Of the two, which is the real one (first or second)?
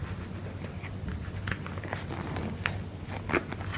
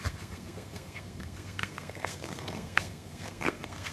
first